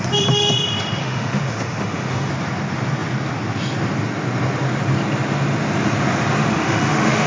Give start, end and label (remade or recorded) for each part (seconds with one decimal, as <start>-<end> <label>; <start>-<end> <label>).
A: 0.0-1.0 recorded; 1.0-2.3 remade; 2.3-6.4 recorded; 6.4-7.3 remade